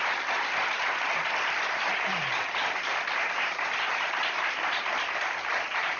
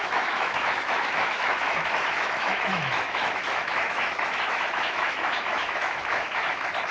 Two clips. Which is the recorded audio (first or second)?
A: first